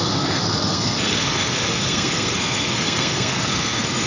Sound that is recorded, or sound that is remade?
remade